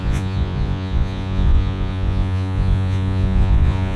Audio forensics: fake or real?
fake